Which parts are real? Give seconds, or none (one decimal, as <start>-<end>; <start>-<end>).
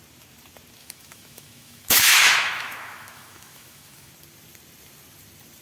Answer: 0.0-0.8; 4.1-5.6